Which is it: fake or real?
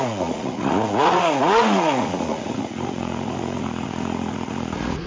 fake